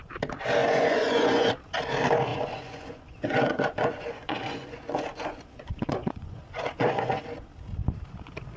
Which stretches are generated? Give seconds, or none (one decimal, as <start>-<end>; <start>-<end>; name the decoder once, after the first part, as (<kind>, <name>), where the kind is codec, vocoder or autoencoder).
0.6-1.5 (vocoder, Vocos); 2.3-7.2